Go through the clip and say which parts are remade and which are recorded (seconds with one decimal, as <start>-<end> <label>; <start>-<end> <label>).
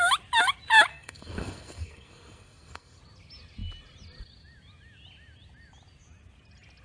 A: 0.0-0.9 recorded; 0.9-3.0 remade; 3.0-6.8 recorded